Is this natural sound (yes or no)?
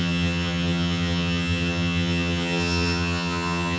no